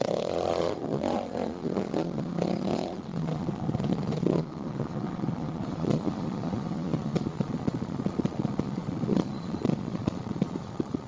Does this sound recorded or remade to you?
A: remade